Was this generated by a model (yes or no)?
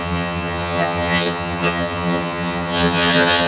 yes